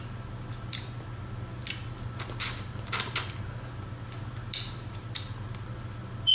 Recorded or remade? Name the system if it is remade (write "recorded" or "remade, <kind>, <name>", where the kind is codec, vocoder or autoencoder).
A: recorded